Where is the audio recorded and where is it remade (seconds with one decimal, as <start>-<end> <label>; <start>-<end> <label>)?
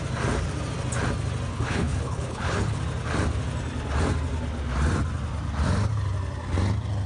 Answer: 0.0-1.5 recorded; 1.5-2.8 remade; 2.8-7.1 recorded